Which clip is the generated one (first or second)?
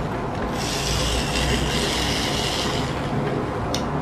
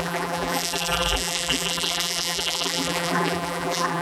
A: second